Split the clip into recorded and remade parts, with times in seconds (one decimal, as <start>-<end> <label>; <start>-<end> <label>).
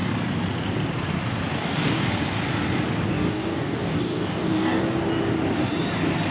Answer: 0.0-1.5 recorded; 1.5-2.1 remade; 2.1-3.1 recorded; 3.1-4.8 remade; 4.8-6.3 recorded